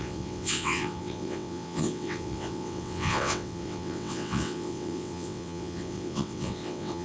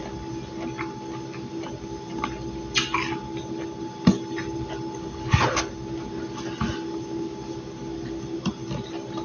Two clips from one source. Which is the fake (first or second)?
first